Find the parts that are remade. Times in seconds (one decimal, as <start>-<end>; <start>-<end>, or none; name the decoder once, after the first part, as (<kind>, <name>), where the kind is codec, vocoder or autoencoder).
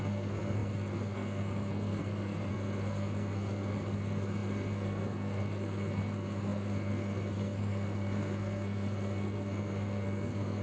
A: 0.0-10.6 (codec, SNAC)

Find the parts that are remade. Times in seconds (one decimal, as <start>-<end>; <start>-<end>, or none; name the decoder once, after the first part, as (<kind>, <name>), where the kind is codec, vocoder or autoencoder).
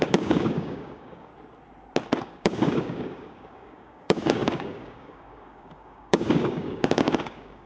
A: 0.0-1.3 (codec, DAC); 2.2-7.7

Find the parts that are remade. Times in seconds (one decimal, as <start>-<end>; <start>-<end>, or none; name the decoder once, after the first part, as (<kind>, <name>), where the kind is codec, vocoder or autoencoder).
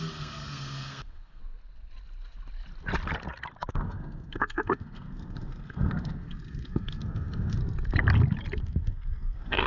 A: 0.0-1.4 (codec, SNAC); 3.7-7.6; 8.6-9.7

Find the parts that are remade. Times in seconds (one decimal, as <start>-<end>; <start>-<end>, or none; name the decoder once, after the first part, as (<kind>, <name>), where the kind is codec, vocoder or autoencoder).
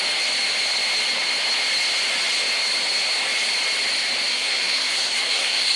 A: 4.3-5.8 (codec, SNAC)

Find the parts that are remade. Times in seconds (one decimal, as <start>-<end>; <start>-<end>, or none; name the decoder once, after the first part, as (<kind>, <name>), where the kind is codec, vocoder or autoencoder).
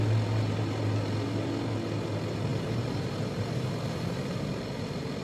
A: 2.5-3.9 (vocoder, BigVGAN v2)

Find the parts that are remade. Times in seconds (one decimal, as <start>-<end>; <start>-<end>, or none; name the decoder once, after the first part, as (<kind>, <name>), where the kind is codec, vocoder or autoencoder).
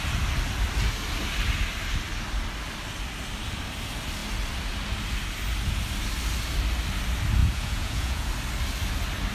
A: 7.4-8.3 (vocoder, Vocos)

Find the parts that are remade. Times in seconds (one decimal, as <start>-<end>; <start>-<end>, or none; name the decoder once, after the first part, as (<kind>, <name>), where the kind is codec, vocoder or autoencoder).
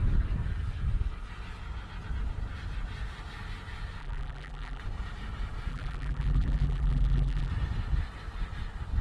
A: 4.0-4.8 (vocoder, BigVGAN v2); 5.7-7.5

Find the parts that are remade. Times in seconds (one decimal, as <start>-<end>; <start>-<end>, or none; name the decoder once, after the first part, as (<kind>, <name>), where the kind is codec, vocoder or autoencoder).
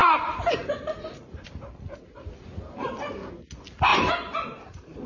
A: 0.0-3.1 (vocoder, BigVGAN v2); 3.9-5.1